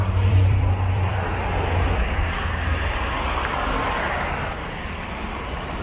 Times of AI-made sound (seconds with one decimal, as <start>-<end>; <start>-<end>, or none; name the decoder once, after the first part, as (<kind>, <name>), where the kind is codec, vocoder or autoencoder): 0.0-1.3 (vocoder, BigVGAN v2); 4.8-5.8